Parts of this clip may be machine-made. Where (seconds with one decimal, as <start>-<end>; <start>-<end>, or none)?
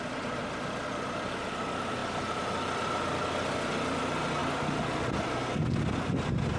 none